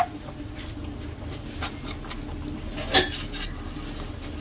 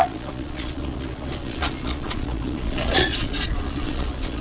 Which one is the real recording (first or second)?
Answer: first